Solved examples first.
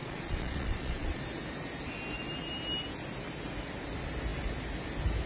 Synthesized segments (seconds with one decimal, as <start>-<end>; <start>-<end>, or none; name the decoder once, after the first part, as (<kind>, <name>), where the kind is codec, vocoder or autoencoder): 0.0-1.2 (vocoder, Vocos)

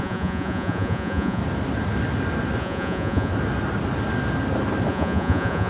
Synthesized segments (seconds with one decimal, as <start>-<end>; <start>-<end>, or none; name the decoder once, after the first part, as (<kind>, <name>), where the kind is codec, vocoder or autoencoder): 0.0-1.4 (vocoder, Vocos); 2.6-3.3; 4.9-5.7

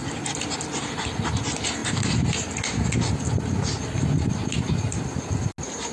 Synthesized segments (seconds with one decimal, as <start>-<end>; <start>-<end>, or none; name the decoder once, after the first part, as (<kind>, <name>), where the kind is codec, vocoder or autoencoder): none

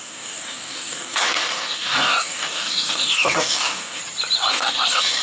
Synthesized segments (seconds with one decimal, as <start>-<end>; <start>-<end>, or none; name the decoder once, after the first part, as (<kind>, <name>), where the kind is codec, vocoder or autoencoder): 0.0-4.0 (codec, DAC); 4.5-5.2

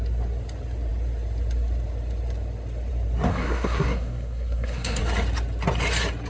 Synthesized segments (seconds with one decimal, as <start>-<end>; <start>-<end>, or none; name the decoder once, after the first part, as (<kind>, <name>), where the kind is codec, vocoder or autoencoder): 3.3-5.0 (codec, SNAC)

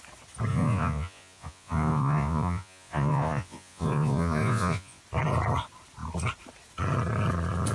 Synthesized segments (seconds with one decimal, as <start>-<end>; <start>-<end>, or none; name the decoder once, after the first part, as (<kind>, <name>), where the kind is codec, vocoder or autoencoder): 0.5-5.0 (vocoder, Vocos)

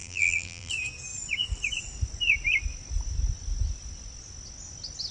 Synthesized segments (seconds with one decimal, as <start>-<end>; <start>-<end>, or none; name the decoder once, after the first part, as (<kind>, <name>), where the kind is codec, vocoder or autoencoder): 0.0-0.7 (vocoder, BigVGAN v2)